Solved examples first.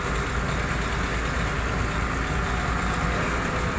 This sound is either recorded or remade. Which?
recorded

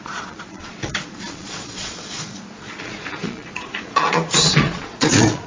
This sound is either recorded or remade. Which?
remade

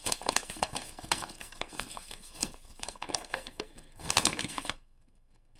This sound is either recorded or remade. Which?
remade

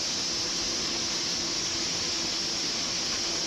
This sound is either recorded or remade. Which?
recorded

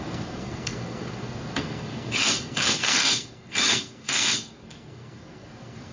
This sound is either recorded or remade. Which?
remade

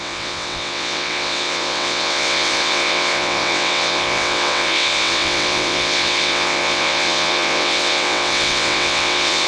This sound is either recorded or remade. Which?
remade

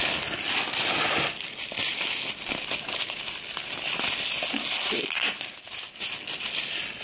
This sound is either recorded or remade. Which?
recorded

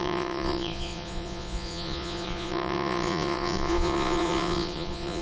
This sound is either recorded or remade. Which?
remade